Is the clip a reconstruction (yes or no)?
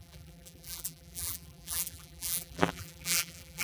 yes